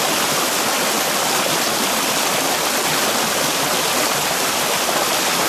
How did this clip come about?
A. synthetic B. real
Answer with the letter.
B